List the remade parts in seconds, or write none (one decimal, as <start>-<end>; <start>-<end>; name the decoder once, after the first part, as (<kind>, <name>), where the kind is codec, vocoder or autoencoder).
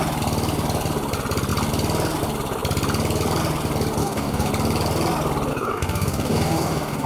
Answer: 4.0-4.5 (codec, DAC); 5.5-7.1